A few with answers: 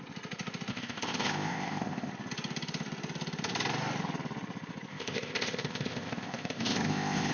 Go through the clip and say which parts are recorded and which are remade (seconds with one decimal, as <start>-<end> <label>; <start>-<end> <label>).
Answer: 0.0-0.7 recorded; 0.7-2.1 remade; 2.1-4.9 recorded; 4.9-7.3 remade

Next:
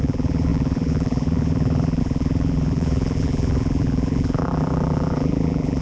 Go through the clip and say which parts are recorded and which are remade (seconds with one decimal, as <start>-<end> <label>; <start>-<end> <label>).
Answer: 0.0-5.8 remade

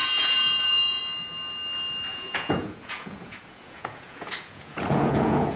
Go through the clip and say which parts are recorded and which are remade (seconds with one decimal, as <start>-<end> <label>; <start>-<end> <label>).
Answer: 0.0-1.0 remade; 1.0-2.1 recorded; 2.1-5.6 remade

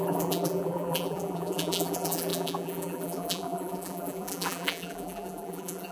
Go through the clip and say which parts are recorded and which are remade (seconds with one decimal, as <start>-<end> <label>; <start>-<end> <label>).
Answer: 0.0-5.9 remade

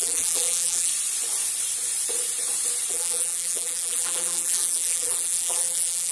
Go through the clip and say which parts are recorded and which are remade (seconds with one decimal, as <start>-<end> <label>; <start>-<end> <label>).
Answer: 0.0-0.9 remade; 0.9-2.9 recorded; 2.9-6.1 remade

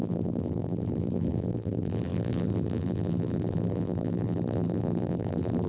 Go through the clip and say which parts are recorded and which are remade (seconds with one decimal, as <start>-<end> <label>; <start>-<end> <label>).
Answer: 0.0-5.7 remade